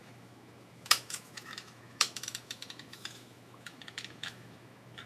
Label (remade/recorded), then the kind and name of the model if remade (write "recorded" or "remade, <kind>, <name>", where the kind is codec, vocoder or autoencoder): remade, autoencoder, DAC-VAE